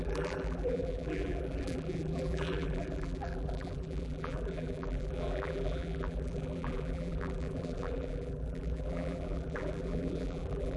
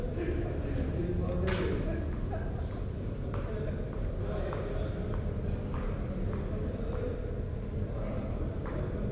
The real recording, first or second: second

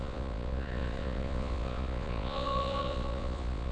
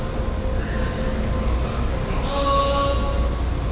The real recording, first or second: second